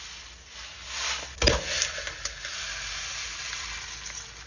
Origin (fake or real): real